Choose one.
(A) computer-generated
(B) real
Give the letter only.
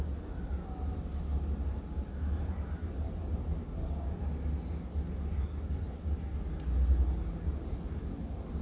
B